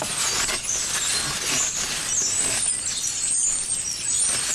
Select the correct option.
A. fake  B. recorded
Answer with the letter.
B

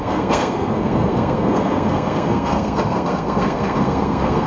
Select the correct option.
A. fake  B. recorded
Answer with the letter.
A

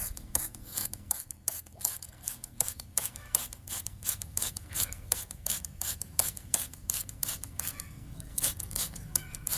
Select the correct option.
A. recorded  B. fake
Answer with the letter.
B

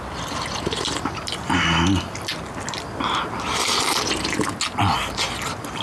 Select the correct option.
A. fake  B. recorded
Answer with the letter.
B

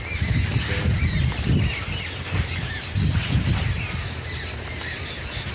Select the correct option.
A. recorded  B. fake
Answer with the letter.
A